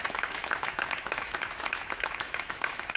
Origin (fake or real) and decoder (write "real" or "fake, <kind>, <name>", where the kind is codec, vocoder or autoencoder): fake, autoencoder, DAC-VAE